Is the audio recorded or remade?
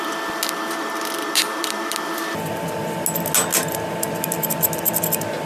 recorded